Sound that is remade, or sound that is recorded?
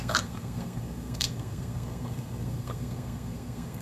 remade